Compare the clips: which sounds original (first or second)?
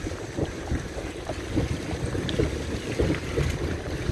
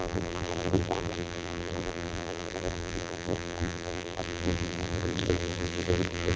first